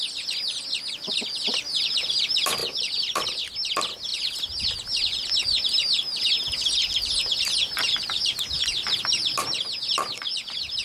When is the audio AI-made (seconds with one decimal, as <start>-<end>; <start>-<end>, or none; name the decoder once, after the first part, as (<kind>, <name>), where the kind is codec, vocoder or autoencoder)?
2.6-3.4 (vocoder, BigVGAN v2)